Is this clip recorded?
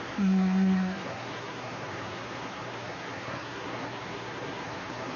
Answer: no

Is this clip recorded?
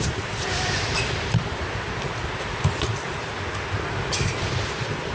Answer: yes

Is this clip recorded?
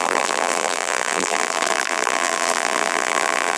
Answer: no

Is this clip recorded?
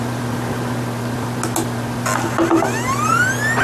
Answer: yes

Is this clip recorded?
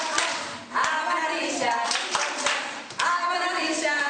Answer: no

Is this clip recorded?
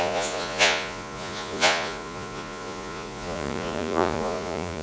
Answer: no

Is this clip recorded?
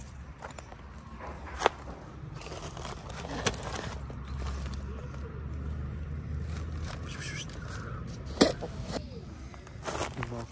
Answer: yes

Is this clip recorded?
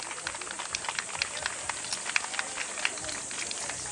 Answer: yes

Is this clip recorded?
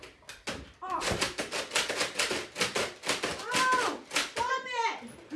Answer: yes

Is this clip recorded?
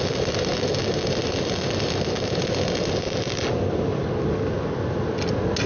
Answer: yes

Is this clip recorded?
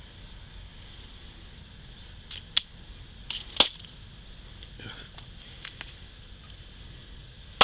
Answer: yes